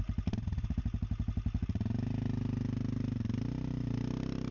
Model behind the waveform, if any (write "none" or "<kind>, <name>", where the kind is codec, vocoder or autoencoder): none